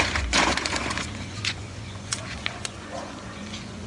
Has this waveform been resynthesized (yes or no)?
yes